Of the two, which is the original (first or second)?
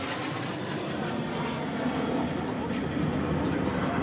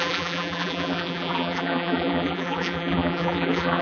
first